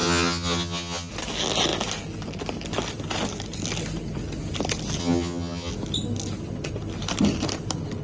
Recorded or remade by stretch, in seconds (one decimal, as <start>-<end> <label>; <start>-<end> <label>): 0.0-1.1 remade; 1.1-5.0 recorded; 5.0-5.7 remade; 5.7-8.0 recorded